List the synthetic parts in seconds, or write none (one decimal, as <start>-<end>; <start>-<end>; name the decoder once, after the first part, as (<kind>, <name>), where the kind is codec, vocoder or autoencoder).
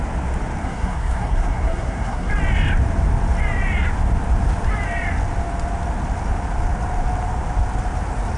0.6-2.3 (codec, SNAC)